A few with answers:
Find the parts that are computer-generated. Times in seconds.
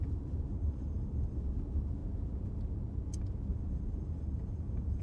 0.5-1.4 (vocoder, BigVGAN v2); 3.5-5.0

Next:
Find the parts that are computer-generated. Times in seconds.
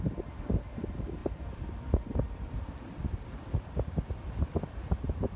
none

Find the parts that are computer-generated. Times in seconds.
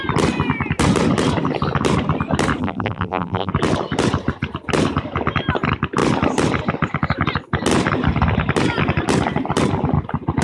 2.6-3.5 (vocoder, BigVGAN v2)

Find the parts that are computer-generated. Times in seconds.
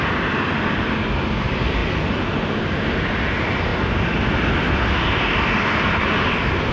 none